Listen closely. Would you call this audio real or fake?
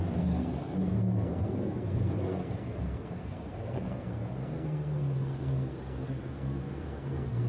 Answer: fake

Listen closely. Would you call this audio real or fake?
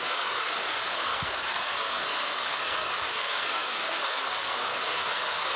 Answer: fake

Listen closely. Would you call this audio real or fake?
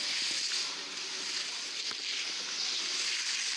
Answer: real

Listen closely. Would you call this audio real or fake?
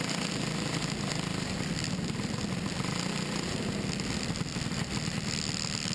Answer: real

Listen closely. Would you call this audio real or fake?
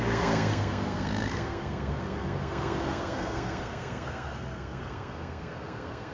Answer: fake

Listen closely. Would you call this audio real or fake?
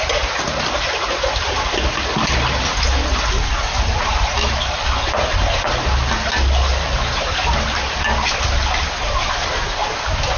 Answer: real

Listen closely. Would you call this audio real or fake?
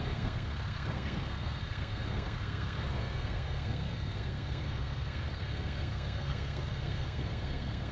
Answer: fake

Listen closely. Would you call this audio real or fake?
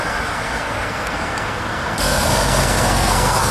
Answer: fake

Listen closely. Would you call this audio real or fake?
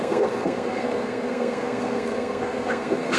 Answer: fake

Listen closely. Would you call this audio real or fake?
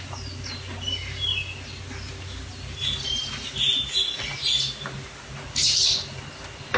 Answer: real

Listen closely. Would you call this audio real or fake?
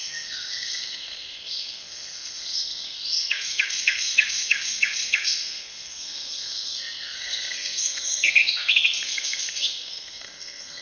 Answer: fake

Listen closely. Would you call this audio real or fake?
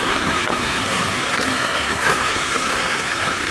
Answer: fake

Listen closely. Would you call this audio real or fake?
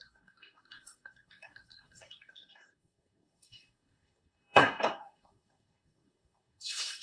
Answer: fake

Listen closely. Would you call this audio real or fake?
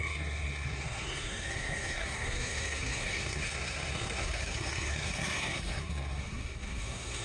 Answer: fake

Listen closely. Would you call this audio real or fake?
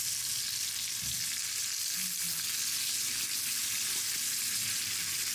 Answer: real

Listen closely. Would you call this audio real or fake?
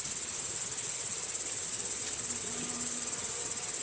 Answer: real